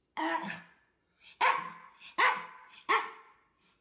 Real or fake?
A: real